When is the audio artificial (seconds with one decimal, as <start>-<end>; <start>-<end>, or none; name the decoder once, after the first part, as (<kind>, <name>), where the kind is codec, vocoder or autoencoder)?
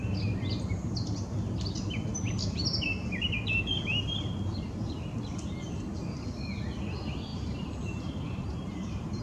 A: 7.3-9.2 (vocoder, BigVGAN v2)